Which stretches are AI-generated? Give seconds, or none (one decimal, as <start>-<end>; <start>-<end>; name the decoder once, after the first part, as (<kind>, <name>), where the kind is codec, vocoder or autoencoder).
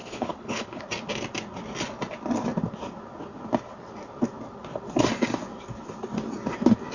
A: 0.0-0.8 (codec, HILCodec)